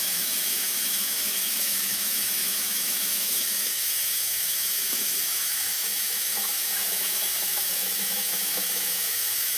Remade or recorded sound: remade